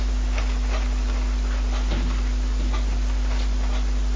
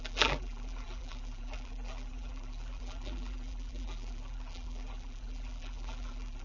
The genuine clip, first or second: first